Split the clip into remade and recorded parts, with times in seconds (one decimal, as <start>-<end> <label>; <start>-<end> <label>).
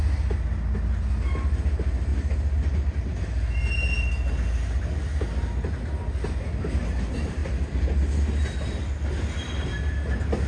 0.0-10.5 recorded